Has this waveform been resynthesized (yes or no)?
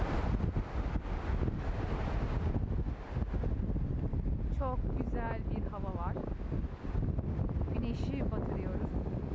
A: no